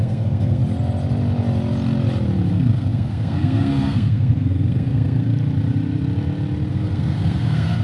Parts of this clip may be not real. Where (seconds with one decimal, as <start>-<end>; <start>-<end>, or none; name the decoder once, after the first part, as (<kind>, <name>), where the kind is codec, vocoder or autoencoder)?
0.0-0.6 (codec, SNAC); 2.5-5.3; 6.7-7.8